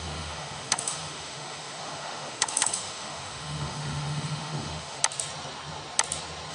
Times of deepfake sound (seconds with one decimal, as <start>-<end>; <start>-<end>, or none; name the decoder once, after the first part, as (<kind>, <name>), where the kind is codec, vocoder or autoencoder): 0.0-5.0 (autoencoder, DAC-VAE)